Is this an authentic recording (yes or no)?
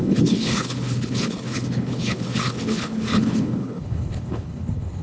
no